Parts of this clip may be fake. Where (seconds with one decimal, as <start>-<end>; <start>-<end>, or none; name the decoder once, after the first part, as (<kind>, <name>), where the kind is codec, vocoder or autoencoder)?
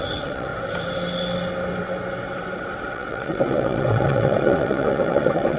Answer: 0.0-0.5 (vocoder, WaveNeXt); 2.9-5.6